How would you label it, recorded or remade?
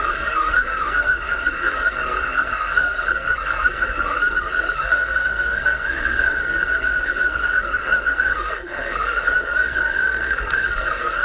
remade